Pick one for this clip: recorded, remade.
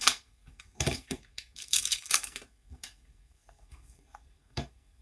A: remade